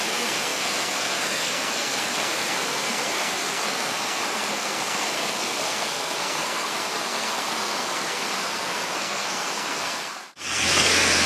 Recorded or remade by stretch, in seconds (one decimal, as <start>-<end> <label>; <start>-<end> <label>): 0.0-11.3 remade